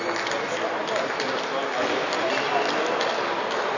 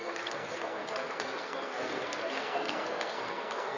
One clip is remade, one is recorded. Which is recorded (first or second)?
first